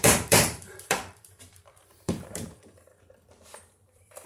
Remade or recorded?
remade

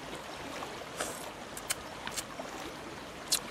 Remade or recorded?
recorded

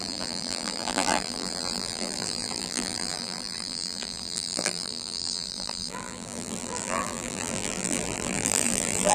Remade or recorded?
remade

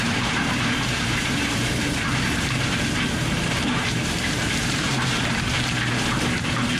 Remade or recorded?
remade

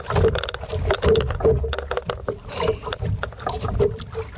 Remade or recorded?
recorded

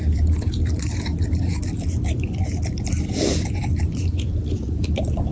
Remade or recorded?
remade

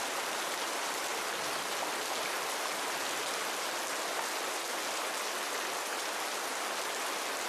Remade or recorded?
recorded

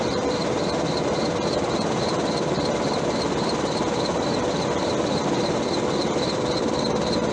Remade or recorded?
remade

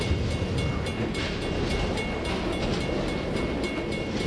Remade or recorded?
recorded